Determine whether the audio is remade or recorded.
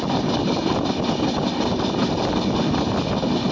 recorded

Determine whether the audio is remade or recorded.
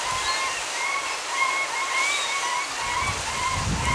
recorded